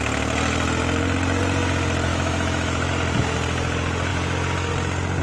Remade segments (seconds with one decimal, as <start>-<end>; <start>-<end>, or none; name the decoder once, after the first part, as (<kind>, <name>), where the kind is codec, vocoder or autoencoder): 2.1-2.9 (autoencoder, DAC-VAE)

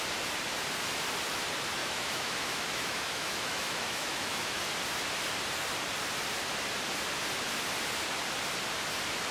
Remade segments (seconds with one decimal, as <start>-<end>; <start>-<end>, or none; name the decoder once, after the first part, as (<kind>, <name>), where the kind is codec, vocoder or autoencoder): 1.8-4.6 (autoencoder, DAC-VAE)

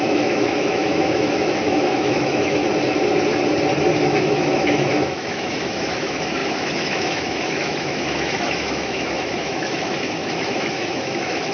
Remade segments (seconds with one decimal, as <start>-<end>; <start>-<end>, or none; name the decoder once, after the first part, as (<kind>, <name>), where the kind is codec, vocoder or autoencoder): 0.0-2.6 (autoencoder, DAC-VAE); 4.0-11.5

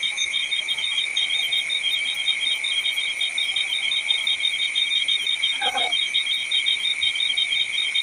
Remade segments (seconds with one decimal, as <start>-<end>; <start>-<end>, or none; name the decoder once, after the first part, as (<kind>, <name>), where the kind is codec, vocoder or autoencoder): 0.0-1.1 (autoencoder, DAC-VAE); 4.9-6.4